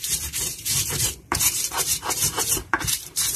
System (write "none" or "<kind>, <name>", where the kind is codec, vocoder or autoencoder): vocoder, BigVGAN v2